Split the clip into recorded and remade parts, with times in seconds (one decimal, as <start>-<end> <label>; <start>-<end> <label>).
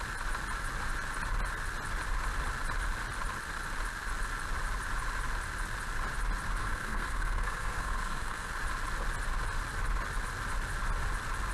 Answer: 0.0-6.6 recorded; 6.6-8.5 remade; 8.5-11.5 recorded